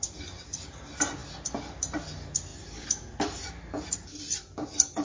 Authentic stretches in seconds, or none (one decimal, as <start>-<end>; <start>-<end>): 0.0-2.5; 4.2-5.0